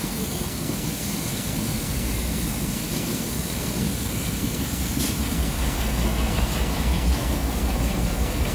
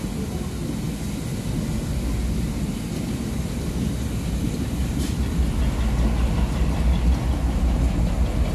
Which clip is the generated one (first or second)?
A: first